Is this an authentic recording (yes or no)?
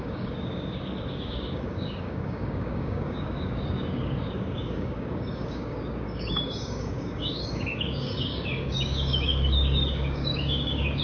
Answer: no